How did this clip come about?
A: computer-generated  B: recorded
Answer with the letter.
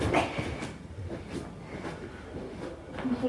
B